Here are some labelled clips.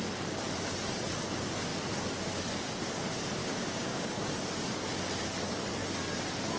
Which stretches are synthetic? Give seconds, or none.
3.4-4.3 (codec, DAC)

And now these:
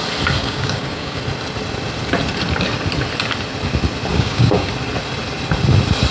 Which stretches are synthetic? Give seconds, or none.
0.4-1.2 (codec, DAC); 4.1-4.7

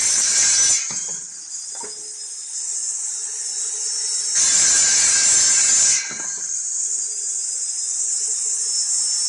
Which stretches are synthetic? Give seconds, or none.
none

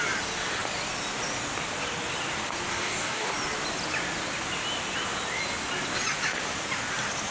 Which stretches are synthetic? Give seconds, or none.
2.7-3.3 (codec, DAC)

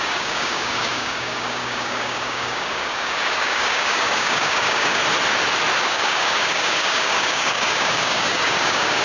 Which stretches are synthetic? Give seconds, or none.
0.0-5.0 (codec, DAC); 5.8-9.0

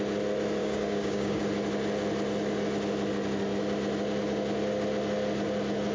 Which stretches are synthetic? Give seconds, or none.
0.6-1.4 (codec, DAC)

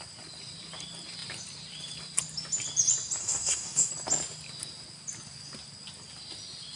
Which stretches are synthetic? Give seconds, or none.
3.2-3.9 (codec, DAC)